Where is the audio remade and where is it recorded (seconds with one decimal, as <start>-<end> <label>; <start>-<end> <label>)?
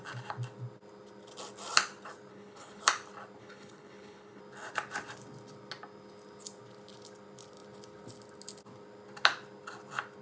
0.0-2.3 recorded; 2.3-2.8 remade; 2.8-3.4 recorded; 3.4-4.4 remade; 4.4-10.2 recorded